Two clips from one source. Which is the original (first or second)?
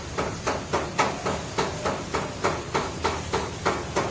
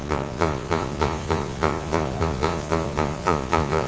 first